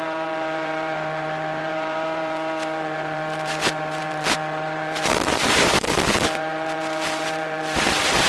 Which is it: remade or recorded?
remade